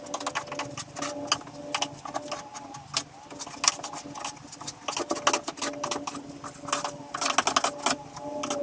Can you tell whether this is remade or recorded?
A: recorded